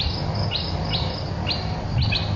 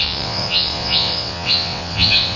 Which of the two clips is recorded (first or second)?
first